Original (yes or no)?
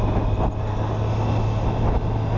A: yes